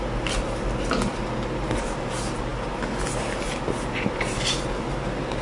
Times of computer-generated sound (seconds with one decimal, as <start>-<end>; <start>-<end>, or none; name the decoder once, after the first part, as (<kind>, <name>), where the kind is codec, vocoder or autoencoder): none